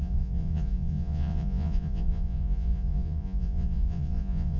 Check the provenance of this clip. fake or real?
fake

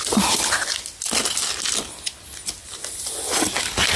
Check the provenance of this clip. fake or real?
real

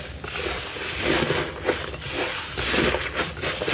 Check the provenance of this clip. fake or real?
real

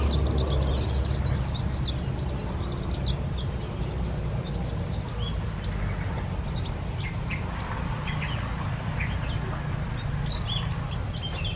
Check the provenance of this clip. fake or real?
real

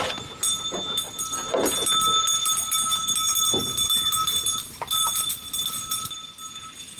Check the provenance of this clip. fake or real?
real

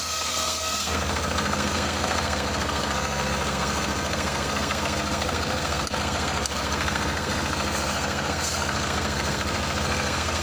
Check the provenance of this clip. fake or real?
fake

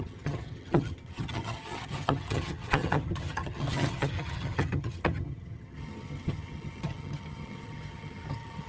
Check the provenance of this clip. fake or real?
fake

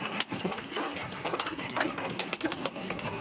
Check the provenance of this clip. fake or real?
fake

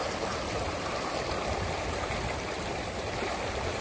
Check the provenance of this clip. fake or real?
real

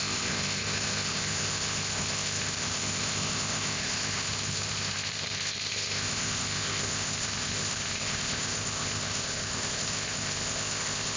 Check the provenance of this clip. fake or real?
fake